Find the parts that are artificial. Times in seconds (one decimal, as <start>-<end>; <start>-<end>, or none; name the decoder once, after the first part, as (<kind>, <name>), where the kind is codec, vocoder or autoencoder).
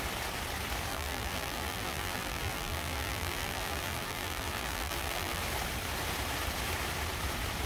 0.9-5.4 (vocoder, BigVGAN v2)